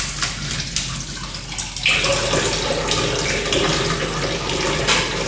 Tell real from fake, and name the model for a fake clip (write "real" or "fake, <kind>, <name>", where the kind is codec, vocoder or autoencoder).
real